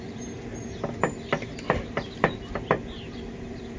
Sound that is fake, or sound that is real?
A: real